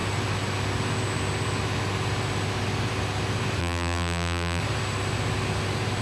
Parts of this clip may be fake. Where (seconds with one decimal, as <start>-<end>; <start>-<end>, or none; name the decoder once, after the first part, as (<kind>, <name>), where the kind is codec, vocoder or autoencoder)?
3.6-4.6 (vocoder, BigVGAN v2)